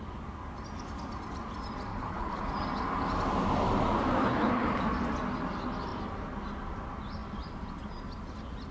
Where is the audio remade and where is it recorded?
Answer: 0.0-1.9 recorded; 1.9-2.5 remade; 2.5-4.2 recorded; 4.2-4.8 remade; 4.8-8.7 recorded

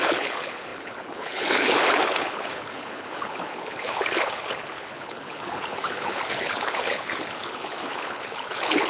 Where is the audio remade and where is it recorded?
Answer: 0.0-8.9 remade